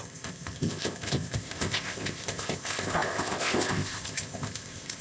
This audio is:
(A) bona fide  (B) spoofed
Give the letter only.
B